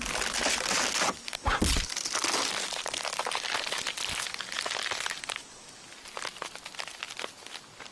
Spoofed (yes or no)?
no